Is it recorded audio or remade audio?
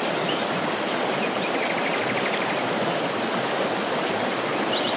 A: recorded